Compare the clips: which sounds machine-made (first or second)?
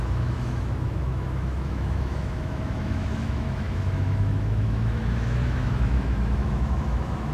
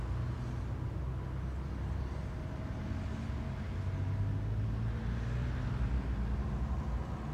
first